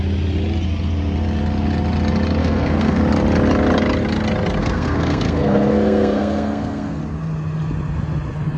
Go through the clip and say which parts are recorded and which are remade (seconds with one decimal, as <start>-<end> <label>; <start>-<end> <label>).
0.0-2.4 recorded; 2.4-3.0 remade; 3.0-4.6 recorded; 4.6-7.0 remade; 7.0-8.6 recorded

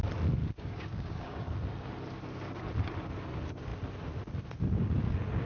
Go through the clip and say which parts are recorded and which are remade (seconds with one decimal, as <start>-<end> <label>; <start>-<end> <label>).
0.0-0.4 recorded; 0.4-1.5 remade; 1.5-5.4 recorded

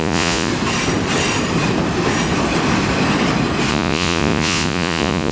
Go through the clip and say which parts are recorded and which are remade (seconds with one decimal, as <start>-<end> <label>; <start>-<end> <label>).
0.0-0.5 remade; 0.5-3.7 recorded; 3.7-5.3 remade